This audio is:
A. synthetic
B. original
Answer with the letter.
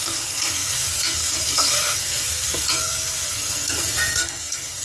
A